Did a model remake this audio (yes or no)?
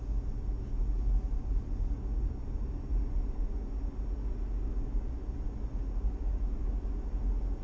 no